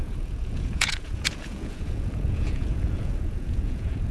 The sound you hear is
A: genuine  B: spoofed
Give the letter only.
B